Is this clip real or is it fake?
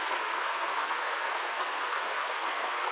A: fake